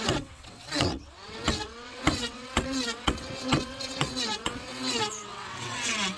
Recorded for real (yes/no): no